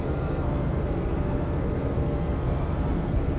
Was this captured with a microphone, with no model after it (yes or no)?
no